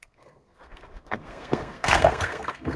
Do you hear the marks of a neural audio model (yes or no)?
yes